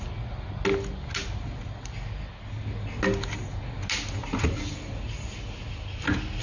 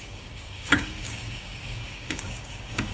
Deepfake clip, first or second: second